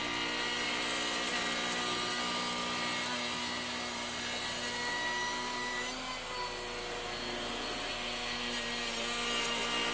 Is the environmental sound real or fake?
real